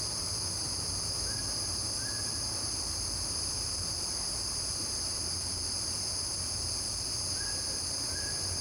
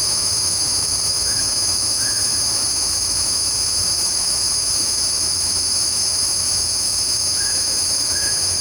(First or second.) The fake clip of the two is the second